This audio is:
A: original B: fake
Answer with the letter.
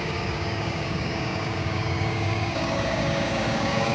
B